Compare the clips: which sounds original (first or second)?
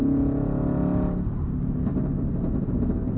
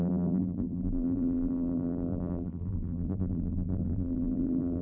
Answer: first